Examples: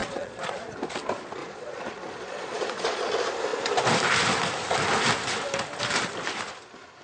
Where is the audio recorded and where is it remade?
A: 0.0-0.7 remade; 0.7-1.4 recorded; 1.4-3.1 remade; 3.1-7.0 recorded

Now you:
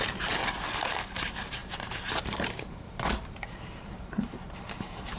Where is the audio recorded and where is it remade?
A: 0.0-0.4 remade; 0.4-0.9 recorded; 0.9-5.2 remade

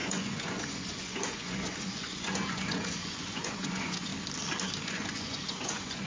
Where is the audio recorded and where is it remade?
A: 0.0-4.1 remade; 4.1-4.8 recorded; 4.8-6.1 remade

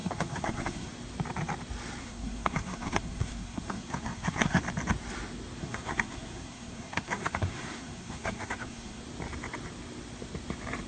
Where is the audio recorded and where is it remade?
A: 0.0-0.9 remade; 0.9-2.0 recorded; 2.0-4.6 remade; 4.6-5.6 recorded; 5.6-9.0 remade; 9.0-10.9 recorded

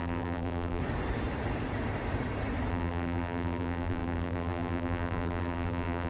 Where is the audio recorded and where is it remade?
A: 0.0-0.8 remade; 0.8-2.7 recorded; 2.7-6.1 remade